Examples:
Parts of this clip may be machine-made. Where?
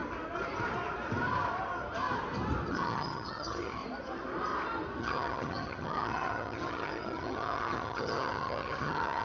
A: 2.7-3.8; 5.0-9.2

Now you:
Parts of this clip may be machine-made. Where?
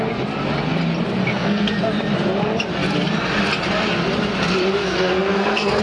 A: 1.3-1.8; 4.8-5.8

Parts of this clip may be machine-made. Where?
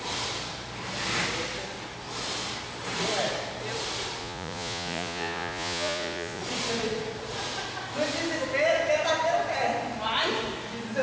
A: 4.2-6.4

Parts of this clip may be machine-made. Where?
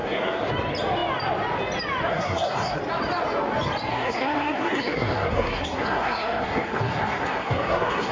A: 0.0-0.5; 2.1-2.8; 3.9-8.1